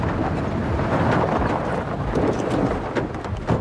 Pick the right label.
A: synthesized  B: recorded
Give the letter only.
B